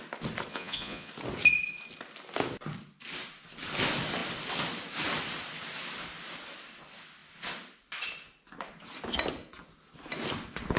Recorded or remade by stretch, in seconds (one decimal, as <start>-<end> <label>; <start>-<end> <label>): 0.0-0.5 recorded; 0.5-1.1 remade; 1.1-10.8 recorded